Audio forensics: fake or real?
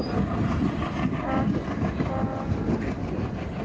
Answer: real